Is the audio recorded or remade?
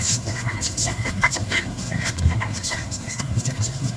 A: remade